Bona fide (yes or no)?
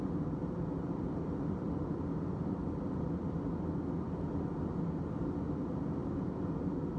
yes